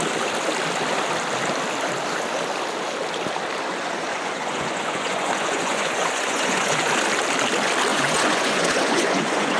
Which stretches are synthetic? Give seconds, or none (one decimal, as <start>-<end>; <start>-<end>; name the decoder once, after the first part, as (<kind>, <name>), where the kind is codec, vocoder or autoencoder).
3.7-6.9 (vocoder, Vocos); 7.9-9.6